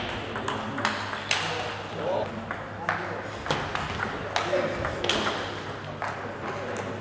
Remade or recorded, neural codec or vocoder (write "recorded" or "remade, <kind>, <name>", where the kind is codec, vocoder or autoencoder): recorded